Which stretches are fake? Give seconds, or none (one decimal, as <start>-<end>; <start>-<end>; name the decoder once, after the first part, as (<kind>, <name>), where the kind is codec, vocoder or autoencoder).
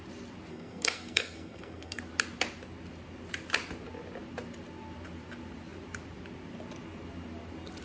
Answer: 0.5-2.0 (codec, SNAC)